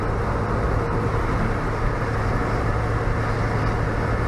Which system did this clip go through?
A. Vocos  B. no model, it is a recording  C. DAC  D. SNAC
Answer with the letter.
B